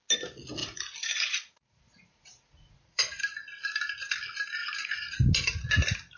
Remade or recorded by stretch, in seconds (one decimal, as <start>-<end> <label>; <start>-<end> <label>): 0.0-0.6 recorded; 0.6-3.2 remade; 3.2-4.6 recorded; 4.6-5.3 remade; 5.3-6.2 recorded